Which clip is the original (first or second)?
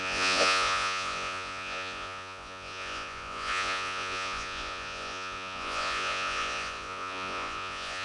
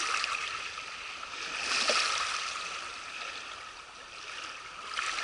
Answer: second